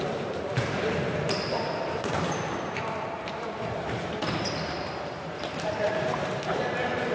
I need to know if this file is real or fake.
fake